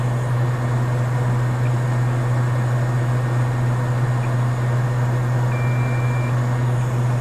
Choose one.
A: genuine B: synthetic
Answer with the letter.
A